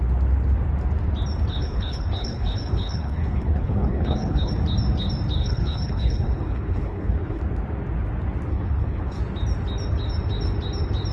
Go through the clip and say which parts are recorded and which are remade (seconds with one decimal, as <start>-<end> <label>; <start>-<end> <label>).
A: 0.0-1.5 recorded; 1.5-4.5 remade; 4.5-5.4 recorded; 5.4-7.4 remade; 7.4-8.5 recorded; 8.5-9.2 remade; 9.2-11.1 recorded